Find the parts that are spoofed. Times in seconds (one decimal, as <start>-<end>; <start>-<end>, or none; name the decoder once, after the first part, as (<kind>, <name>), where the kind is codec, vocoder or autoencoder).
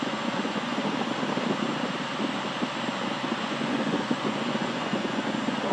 0.0-0.7 (vocoder, Vocos); 3.4-5.7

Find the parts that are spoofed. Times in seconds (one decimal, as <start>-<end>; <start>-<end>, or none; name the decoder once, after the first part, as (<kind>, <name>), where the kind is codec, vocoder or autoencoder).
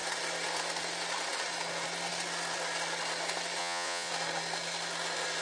3.6-4.1 (vocoder, Vocos)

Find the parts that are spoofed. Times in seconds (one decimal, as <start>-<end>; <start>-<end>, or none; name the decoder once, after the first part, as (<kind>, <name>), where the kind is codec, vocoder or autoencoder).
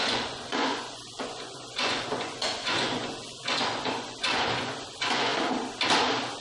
0.0-5.3 (vocoder, Vocos)